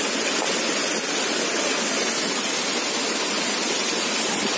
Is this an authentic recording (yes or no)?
yes